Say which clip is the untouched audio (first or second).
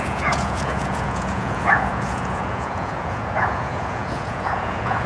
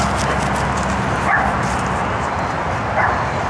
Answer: second